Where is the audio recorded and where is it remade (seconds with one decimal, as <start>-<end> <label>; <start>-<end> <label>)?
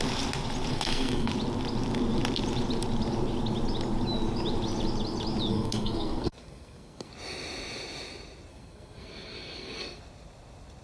0.0-0.7 recorded; 0.7-1.3 remade; 1.3-5.5 recorded; 5.5-7.1 remade; 7.1-8.5 recorded; 8.5-10.0 remade; 10.0-10.8 recorded